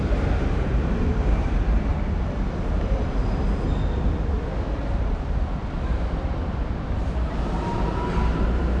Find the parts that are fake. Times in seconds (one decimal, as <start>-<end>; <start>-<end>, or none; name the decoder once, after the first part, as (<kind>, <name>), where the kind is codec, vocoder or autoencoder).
0.0-1.9 (vocoder, BigVGAN v2); 2.8-3.2; 5.0-5.6; 6.8-8.8